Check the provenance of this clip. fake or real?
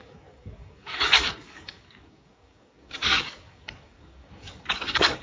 fake